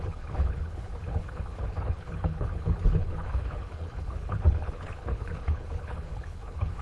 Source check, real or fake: fake